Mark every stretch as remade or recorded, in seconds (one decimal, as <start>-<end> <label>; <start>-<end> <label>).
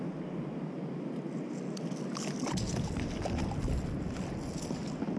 0.0-5.2 recorded